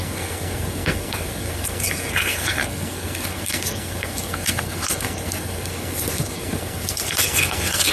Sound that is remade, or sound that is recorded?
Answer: remade